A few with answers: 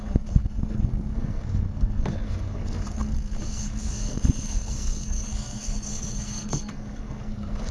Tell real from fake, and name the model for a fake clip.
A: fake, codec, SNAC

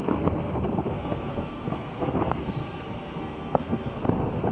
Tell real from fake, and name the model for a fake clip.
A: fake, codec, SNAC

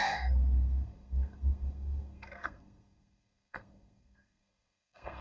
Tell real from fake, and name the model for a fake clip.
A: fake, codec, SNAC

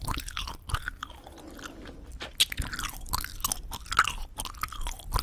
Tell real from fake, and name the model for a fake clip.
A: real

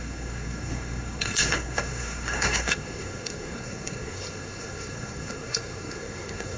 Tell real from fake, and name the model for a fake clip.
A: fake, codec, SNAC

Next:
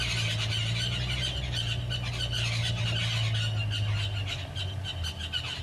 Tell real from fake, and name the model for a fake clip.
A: real